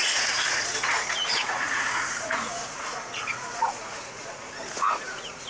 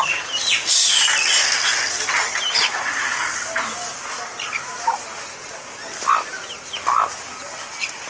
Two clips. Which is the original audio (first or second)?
second